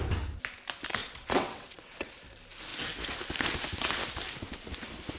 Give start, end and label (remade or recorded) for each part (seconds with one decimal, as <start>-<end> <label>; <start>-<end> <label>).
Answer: 0.0-1.0 recorded; 1.0-2.1 remade; 2.1-5.2 recorded